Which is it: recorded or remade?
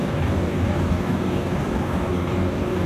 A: remade